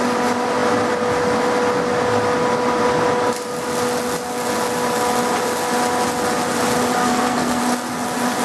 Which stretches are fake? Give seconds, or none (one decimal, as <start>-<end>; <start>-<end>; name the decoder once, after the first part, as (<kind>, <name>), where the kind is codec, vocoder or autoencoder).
7.0-7.6 (codec, SNAC)

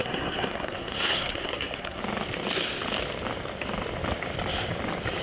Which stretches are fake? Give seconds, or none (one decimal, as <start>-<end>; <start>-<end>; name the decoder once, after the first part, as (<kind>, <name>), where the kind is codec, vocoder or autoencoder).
0.0-2.0 (codec, SNAC)

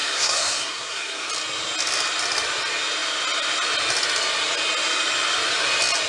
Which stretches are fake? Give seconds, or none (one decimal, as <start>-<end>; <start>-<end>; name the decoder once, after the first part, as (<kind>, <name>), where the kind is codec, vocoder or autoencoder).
0.0-1.3 (codec, SNAC)

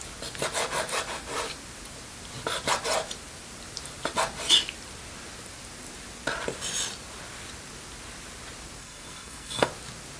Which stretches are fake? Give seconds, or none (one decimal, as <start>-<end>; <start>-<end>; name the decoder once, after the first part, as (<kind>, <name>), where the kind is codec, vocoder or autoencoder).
8.8-9.7 (codec, SNAC)

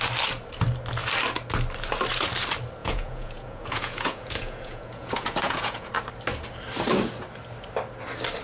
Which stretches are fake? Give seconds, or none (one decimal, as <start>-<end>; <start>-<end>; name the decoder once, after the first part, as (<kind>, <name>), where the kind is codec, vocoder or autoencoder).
2.8-5.9 (vocoder, Vocos)

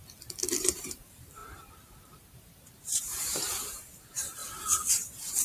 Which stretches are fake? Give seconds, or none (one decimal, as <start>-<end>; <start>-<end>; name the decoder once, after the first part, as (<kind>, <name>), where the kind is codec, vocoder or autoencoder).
0.6-4.4 (vocoder, BigVGAN v2); 4.9-5.4